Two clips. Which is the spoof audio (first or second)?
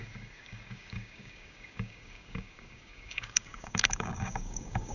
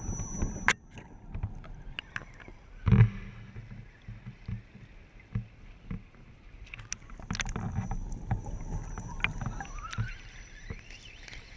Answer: first